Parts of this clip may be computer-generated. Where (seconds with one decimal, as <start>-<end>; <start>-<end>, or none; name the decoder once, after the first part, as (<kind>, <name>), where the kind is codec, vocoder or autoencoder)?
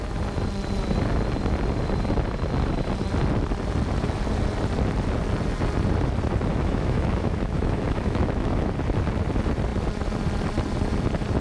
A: 6.5-8.7 (autoencoder, DAC-VAE)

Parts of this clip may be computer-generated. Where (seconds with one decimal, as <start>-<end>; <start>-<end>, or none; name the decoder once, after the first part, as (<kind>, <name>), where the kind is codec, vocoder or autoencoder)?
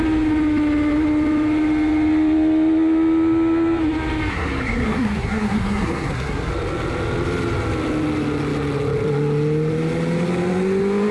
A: 4.3-6.5 (codec, SNAC)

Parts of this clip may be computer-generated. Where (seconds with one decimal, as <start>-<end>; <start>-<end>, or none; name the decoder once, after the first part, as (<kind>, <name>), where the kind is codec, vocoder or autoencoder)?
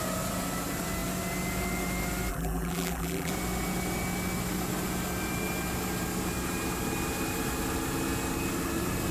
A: 2.3-3.3 (vocoder, BigVGAN v2)